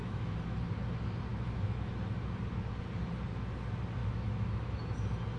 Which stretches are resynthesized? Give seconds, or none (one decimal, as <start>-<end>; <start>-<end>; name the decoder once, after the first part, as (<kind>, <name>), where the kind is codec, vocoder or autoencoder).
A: 0.0-0.6 (autoencoder, DAC-VAE); 1.3-1.9; 4.0-4.8